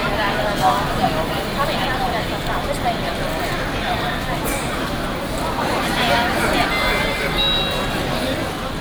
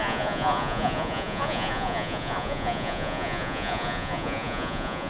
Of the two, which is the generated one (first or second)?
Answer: second